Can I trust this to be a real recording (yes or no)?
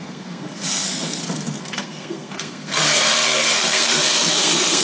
no